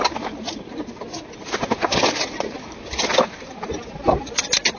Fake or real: real